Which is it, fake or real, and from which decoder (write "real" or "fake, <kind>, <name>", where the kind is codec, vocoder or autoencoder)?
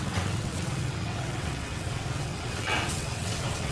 fake, vocoder, WaveNeXt